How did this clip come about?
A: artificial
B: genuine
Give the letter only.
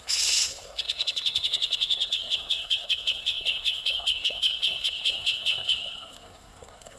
A